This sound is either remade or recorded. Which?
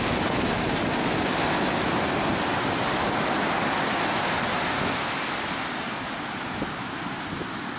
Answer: recorded